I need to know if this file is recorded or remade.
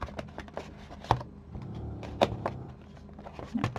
recorded